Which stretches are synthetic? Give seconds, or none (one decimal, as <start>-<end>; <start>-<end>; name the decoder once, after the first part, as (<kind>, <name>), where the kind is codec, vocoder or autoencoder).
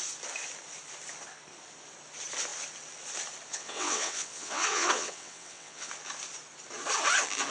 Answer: 3.5-5.9 (vocoder, WaveNeXt)